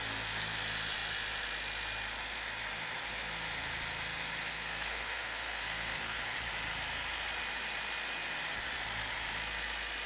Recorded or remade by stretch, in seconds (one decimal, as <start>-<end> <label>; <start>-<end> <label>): 0.0-4.5 recorded; 4.5-6.2 remade; 6.2-10.1 recorded

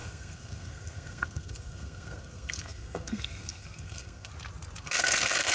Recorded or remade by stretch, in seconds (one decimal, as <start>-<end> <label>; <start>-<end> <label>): 0.0-4.3 remade; 4.3-4.8 recorded; 4.8-5.5 remade

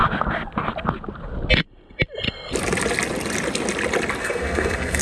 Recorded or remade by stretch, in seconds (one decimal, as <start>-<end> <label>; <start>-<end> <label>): 0.0-4.2 recorded; 4.2-5.0 remade